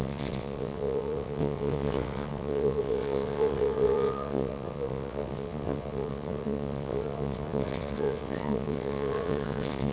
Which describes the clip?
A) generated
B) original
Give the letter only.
A